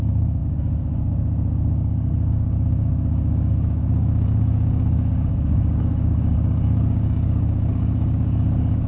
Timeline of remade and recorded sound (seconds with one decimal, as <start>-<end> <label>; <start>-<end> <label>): 0.0-8.9 remade